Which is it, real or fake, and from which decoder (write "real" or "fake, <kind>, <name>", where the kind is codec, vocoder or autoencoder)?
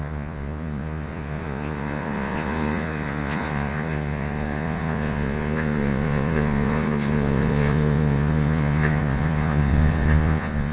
fake, vocoder, Vocos